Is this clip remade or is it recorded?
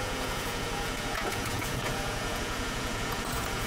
remade